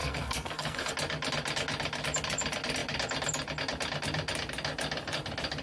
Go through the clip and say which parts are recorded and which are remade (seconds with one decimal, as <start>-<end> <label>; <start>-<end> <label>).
0.0-0.9 remade; 0.9-5.6 recorded